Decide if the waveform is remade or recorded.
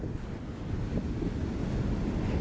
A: recorded